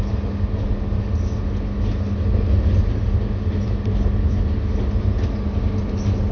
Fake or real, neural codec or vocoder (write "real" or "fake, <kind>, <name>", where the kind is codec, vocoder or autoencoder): real